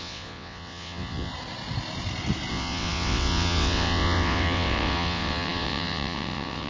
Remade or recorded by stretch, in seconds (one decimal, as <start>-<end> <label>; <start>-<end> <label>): 0.0-1.3 remade; 1.3-2.5 recorded; 2.5-6.7 remade